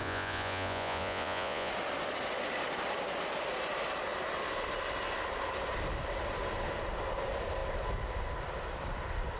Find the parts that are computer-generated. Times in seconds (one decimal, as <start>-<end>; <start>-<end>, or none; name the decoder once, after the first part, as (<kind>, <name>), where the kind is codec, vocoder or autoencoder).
0.0-1.7 (vocoder, Vocos)